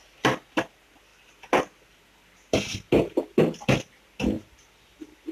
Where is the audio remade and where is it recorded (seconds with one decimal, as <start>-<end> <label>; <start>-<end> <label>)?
0.0-5.3 recorded